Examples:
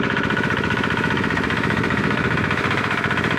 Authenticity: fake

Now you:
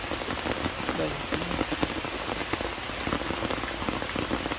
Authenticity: real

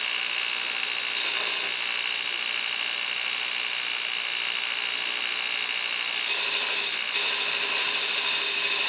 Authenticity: real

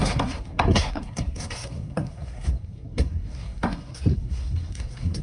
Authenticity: fake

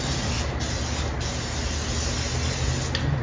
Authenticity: real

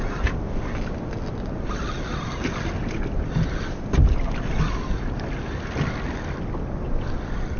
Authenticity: real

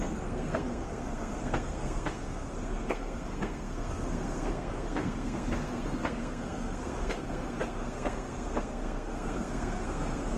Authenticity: fake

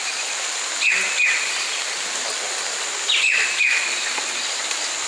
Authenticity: real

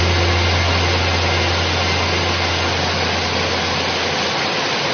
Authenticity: real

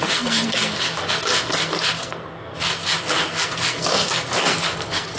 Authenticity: fake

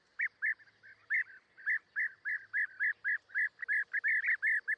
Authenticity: real